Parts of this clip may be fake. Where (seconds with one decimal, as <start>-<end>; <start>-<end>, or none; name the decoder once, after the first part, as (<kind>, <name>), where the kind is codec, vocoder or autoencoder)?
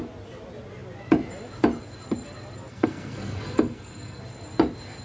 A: 2.7-4.2 (codec, SNAC)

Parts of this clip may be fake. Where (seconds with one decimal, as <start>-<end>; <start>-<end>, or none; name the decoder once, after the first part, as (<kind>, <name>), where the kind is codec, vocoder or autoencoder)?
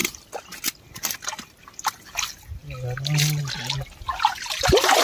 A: none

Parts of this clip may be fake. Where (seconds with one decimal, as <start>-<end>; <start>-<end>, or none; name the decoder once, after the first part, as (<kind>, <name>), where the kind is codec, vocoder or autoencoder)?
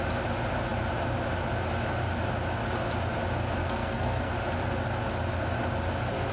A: 3.6-4.3 (codec, SNAC)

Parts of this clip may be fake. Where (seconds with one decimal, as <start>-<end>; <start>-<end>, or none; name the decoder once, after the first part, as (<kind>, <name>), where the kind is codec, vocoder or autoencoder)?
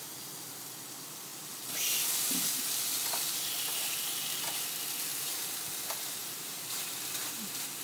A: none